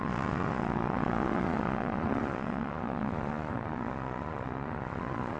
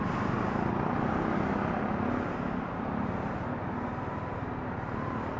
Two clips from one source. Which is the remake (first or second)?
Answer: first